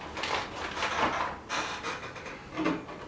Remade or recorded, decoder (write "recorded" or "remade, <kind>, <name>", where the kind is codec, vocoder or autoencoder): recorded